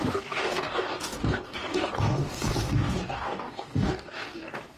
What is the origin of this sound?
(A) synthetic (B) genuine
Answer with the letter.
A